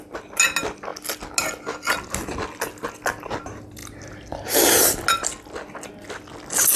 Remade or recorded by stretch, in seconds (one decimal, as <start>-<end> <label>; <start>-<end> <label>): 0.0-6.8 recorded